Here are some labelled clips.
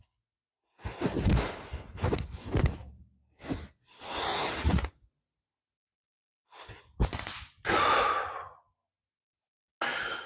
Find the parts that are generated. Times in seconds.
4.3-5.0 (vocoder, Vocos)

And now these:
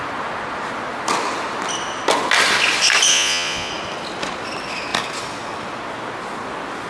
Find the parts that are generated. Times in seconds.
3.1-3.7 (vocoder, Vocos)

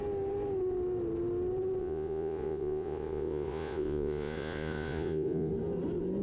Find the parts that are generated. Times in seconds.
1.8-5.5 (vocoder, Vocos)

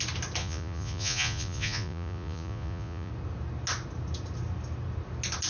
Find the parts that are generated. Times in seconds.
0.4-3.1 (vocoder, Vocos)

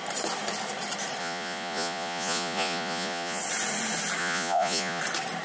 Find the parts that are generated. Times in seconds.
1.2-3.4 (vocoder, Vocos); 4.2-5.0